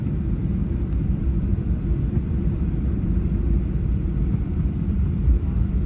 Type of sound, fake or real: fake